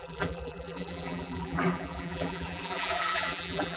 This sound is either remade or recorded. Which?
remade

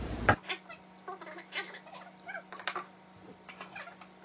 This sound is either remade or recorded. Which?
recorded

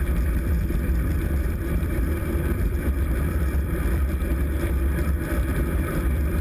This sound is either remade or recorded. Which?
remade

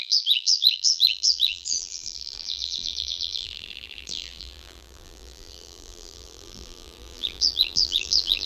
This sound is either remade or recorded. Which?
remade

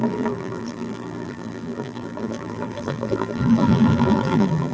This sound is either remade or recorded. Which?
remade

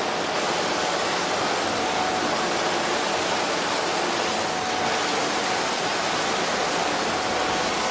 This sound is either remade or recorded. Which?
recorded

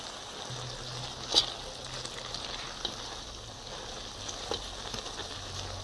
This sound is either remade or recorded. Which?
recorded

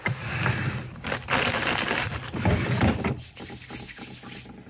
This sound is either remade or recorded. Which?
recorded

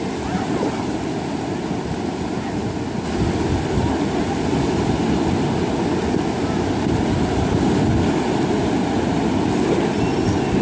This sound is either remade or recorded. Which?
recorded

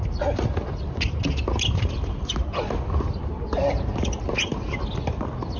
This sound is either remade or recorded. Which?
recorded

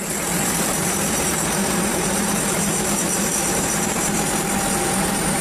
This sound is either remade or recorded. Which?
remade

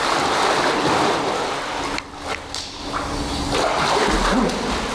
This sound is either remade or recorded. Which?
remade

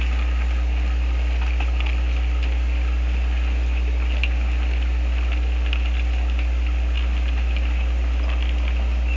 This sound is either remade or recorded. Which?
recorded